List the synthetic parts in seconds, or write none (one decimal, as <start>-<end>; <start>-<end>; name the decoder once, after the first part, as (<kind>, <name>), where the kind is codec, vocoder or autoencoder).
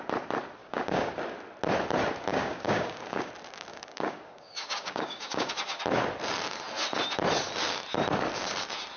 0.6-1.1 (codec, DAC); 2.3-3.3; 3.7-5.5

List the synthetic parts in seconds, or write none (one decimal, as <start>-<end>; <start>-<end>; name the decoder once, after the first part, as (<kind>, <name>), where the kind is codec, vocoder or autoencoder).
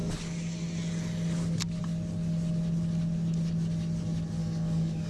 4.4-5.1 (codec, DAC)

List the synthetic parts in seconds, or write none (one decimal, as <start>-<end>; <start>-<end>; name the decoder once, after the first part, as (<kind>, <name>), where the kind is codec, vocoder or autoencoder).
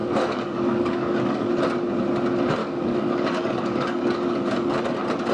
0.0-1.5 (codec, DAC); 2.6-4.8